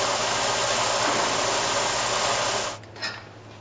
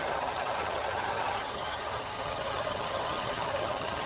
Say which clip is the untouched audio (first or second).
first